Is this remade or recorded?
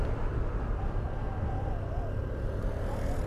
recorded